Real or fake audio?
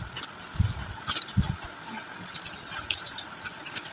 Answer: real